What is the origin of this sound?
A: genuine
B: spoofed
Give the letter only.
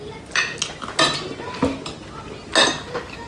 A